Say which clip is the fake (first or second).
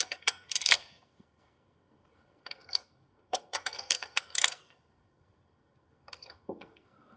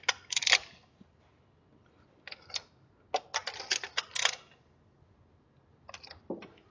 first